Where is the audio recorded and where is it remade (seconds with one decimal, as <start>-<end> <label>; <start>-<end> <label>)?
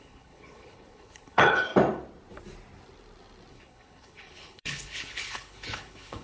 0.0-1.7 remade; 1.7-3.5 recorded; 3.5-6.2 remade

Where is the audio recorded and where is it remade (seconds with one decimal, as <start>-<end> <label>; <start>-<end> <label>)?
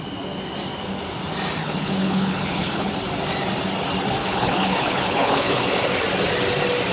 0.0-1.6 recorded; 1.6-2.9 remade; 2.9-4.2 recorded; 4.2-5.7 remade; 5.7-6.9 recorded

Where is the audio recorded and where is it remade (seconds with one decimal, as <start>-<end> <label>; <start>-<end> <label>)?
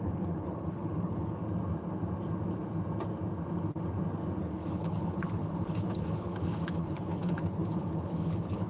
0.0-1.4 remade; 1.4-4.4 recorded; 4.4-8.7 remade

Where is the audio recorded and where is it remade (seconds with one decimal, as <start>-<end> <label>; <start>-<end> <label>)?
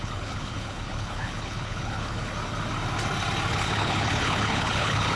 0.0-2.3 remade; 2.3-3.5 recorded; 3.5-5.2 remade